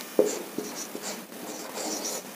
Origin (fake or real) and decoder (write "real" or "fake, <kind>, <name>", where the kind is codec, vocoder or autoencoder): real